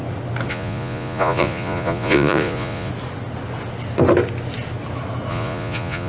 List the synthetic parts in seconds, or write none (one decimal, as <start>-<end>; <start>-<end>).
0.5-2.9; 5.3-6.1